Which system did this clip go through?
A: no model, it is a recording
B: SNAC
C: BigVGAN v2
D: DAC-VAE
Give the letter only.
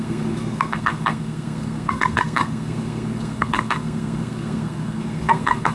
B